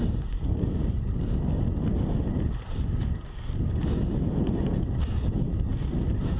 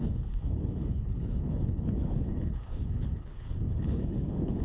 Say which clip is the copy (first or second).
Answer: second